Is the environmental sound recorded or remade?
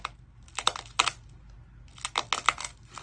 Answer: recorded